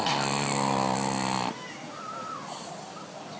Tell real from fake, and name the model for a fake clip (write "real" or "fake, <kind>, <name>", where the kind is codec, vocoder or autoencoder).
real